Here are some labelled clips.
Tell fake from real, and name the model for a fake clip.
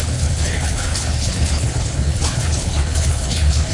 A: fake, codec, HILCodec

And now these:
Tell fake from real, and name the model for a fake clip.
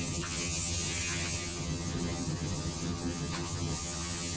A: fake, vocoder, HiFi-GAN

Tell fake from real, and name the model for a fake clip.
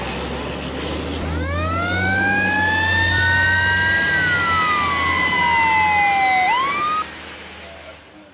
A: real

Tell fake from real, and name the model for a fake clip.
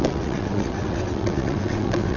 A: fake, vocoder, WaveNeXt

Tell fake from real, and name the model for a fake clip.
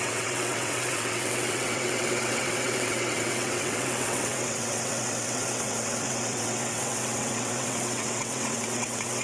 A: fake, vocoder, WaveNeXt